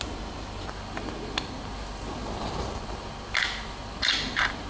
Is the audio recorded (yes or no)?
yes